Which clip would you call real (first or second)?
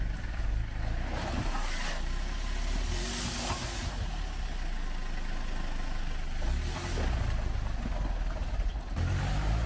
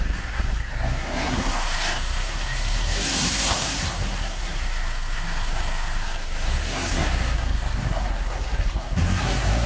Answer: first